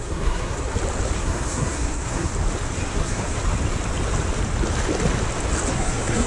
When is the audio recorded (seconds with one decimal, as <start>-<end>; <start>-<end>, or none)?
0.7-1.2; 2.3-2.9; 3.4-5.7